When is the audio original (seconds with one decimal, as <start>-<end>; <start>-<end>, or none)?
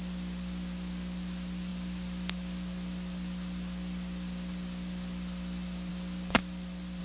0.0-7.0